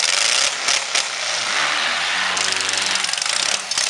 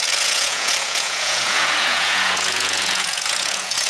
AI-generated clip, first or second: second